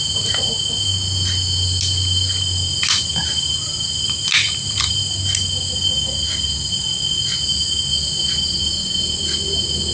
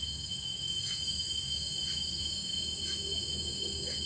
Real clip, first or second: first